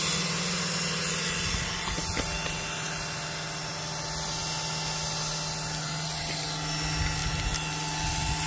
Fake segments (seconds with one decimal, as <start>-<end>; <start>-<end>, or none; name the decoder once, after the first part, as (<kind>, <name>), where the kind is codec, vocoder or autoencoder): none